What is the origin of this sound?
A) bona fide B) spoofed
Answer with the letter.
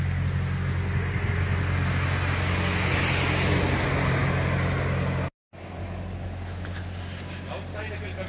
A